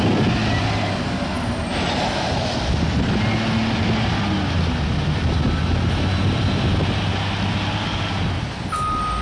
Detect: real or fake real